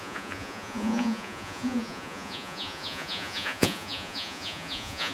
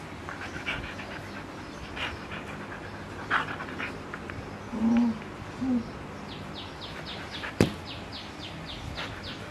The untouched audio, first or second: second